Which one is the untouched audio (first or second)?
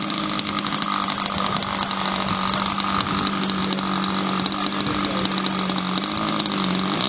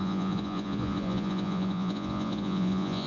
first